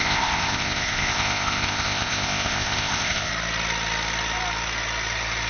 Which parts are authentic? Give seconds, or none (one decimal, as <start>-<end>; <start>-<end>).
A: 3.3-5.5